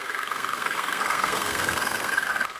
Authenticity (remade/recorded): remade